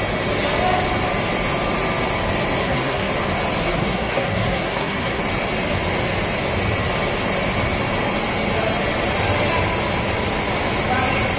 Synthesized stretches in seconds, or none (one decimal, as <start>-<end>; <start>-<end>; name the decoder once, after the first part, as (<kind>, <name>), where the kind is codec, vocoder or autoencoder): 2.6-3.1 (codec, SNAC); 3.6-5.2